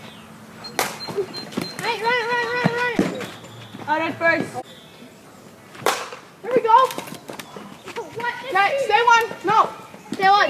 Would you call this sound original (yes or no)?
yes